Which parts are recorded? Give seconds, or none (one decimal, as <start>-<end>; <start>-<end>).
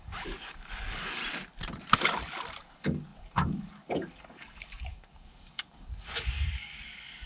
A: 1.2-2.6